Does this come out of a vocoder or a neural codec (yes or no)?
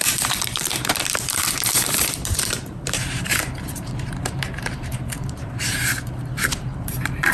yes